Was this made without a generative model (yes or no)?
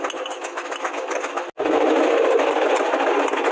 yes